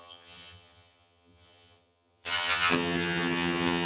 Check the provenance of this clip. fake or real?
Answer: fake